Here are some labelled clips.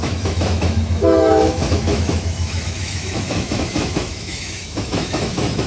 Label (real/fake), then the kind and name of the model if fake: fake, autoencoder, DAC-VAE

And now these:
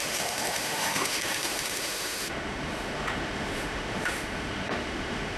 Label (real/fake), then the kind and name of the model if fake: fake, autoencoder, DAC-VAE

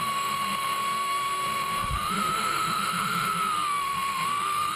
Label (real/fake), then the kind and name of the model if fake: fake, autoencoder, DAC-VAE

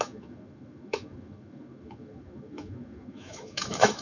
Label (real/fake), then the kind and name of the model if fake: fake, autoencoder, DAC-VAE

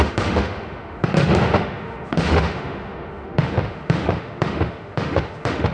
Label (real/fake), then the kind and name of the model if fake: fake, autoencoder, DAC-VAE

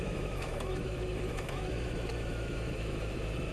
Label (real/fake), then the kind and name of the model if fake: fake, autoencoder, DAC-VAE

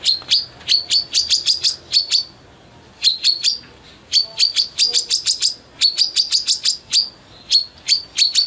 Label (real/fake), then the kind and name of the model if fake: real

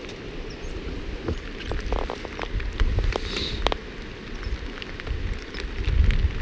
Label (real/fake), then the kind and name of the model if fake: real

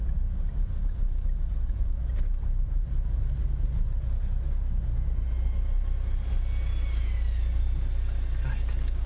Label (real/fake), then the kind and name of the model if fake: real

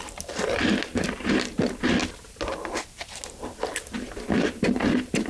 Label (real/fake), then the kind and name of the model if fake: real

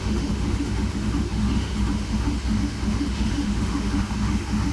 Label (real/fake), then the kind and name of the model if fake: fake, autoencoder, DAC-VAE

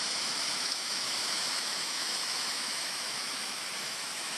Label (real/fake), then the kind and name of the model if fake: fake, autoencoder, DAC-VAE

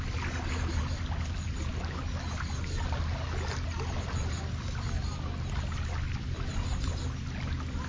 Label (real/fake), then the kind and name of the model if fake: real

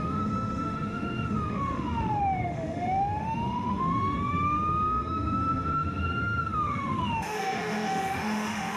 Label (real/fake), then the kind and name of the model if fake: fake, autoencoder, DAC-VAE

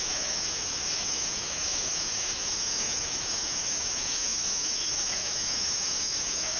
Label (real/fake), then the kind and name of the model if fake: fake, autoencoder, DAC-VAE